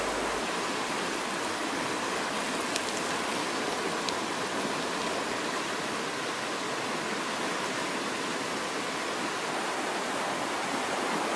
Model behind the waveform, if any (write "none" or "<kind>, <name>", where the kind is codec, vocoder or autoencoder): none